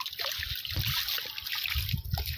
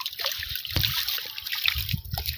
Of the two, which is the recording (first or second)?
first